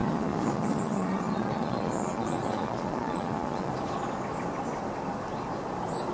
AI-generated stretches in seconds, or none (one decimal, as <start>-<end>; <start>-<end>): 0.0-3.7